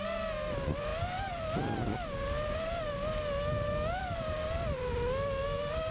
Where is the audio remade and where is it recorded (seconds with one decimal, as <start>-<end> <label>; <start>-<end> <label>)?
0.0-5.9 recorded